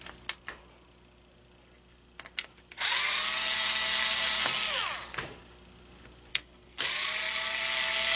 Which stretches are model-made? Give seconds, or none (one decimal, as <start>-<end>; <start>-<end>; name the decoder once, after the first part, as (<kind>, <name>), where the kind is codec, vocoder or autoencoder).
6.3-6.8 (codec, SNAC)